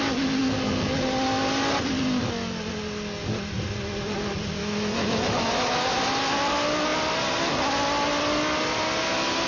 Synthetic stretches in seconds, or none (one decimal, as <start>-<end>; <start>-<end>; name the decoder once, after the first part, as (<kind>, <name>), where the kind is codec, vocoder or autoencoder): 4.6-6.0 (autoencoder, DAC-VAE)